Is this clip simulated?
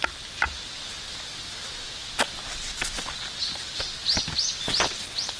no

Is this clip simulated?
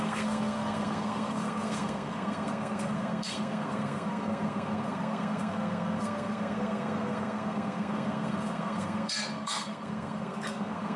yes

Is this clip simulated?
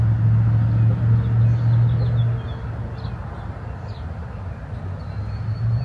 no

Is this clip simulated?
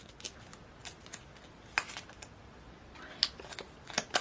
no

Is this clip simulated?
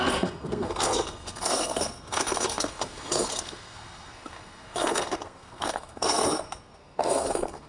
yes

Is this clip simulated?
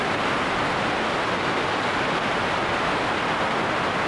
no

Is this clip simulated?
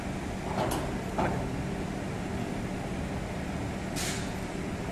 no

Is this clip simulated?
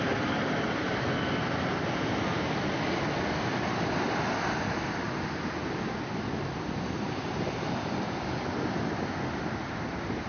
no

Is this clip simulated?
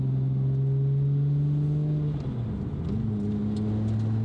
no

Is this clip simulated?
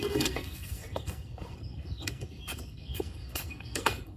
yes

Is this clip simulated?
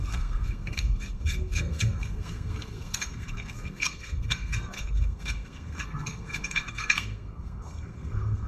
yes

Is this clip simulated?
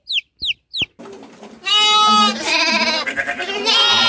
no